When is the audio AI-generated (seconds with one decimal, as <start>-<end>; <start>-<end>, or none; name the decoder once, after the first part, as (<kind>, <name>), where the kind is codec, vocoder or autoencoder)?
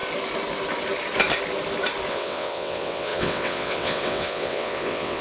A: 2.1-5.2 (vocoder, WaveNeXt)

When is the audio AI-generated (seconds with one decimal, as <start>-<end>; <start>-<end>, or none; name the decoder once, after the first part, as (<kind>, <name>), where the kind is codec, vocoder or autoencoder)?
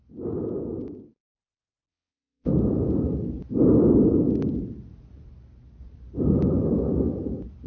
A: 1.9-2.5 (vocoder, WaveNeXt)